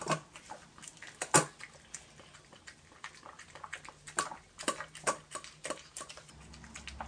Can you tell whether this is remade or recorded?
recorded